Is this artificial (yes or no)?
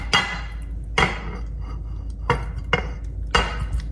no